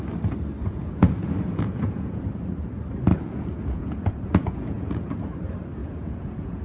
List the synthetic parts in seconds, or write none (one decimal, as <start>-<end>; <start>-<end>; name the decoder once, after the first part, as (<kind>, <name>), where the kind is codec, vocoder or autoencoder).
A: 0.6-2.2 (vocoder, Vocos); 3.1-5.1; 5.8-6.6

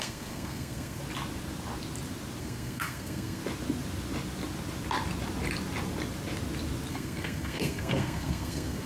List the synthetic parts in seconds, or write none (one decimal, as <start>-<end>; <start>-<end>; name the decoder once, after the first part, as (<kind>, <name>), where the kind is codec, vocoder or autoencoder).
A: 0.0-1.0 (codec, SNAC); 2.4-3.4; 6.9-8.9

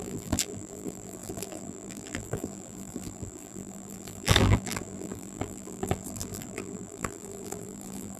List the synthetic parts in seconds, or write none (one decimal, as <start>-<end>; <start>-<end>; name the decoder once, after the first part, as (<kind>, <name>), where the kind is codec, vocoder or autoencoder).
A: 0.0-8.2 (vocoder, BigVGAN v2)

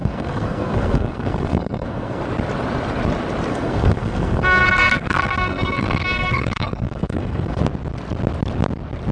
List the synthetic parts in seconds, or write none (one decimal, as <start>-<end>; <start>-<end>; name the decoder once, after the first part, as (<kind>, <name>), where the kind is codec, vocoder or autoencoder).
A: 0.0-2.2 (codec, SNAC); 3.5-7.6

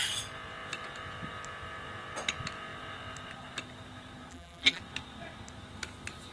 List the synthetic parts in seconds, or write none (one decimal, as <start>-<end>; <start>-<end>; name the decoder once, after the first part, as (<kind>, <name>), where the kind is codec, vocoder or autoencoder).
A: 4.3-4.8 (vocoder, BigVGAN v2)

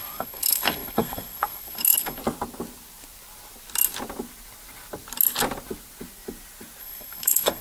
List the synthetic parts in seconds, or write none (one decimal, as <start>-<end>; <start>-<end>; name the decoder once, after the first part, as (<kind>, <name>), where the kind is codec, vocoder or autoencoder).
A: 0.0-2.2 (codec, SNAC); 6.8-7.6